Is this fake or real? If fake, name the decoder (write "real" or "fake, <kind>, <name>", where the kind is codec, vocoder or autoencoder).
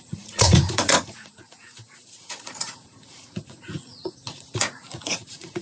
fake, vocoder, Vocos